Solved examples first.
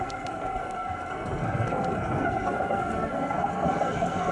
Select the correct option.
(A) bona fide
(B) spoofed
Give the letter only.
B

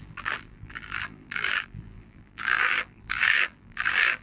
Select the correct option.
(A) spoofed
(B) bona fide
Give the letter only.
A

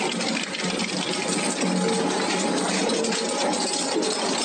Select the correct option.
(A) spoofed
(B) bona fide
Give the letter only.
B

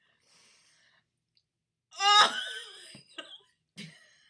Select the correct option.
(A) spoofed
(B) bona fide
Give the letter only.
B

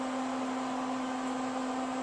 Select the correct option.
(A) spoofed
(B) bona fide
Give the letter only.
B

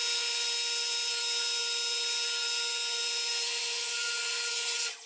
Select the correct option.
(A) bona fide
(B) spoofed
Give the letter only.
A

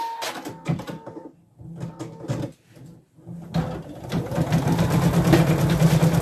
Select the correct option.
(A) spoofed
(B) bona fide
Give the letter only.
B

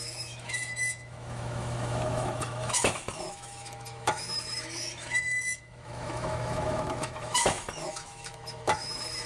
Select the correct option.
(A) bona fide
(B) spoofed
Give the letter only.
B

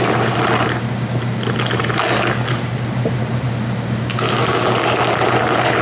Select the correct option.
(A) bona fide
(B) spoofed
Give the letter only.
A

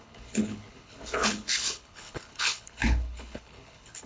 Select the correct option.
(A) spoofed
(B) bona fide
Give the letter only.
A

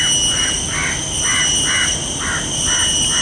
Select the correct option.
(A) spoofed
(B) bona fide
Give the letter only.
B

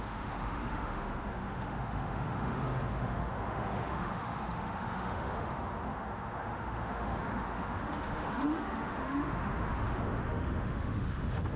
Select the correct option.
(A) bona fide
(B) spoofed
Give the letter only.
B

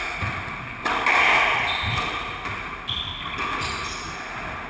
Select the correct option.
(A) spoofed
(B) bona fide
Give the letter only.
B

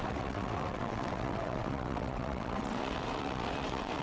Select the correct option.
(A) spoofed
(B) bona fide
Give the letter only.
A